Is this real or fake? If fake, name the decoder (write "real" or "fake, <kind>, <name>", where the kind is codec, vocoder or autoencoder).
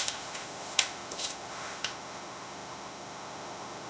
fake, autoencoder, DAC-VAE